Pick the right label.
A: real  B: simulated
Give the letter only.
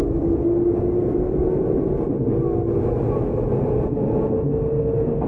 A